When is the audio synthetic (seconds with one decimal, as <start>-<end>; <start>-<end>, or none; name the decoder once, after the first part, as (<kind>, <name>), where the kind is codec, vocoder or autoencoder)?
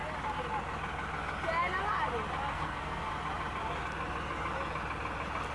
2.5-3.1 (codec, SNAC)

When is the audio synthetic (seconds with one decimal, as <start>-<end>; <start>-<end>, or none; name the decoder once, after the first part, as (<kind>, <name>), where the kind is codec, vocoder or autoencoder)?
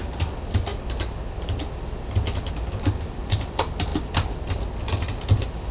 none